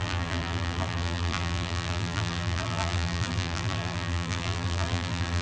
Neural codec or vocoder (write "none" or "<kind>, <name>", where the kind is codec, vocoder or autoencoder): vocoder, BigVGAN v2